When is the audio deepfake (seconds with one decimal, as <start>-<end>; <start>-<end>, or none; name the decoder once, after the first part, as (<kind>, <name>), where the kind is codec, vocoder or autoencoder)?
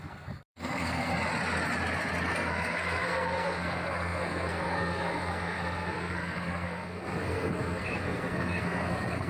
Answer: 0.0-1.1 (codec, SNAC); 2.3-9.3